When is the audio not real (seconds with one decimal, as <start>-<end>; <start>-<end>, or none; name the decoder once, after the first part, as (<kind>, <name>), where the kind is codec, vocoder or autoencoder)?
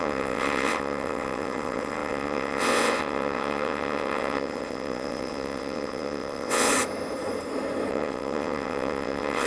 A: 0.0-6.7 (vocoder, WaveNeXt); 7.9-9.5